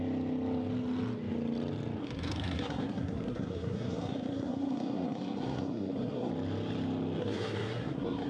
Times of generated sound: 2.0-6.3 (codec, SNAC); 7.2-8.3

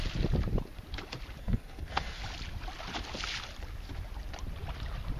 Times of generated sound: 1.4-2.2 (codec, SNAC)

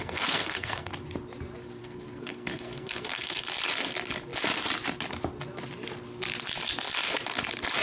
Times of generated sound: 0.0-0.9 (codec, SNAC); 1.8-3.4

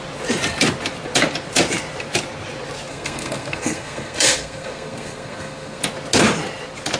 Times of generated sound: 2.9-5.8 (codec, SNAC)